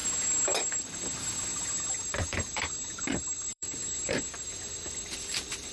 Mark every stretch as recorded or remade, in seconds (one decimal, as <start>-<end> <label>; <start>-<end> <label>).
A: 0.0-1.5 recorded; 1.5-4.9 remade; 4.9-5.7 recorded